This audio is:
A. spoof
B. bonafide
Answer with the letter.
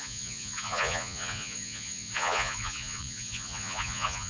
A